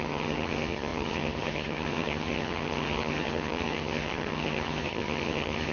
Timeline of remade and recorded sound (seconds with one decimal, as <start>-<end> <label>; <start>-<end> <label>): 0.0-5.7 remade